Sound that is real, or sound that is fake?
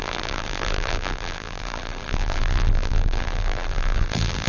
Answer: fake